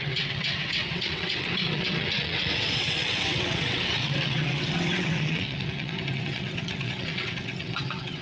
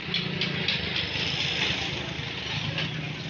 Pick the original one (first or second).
second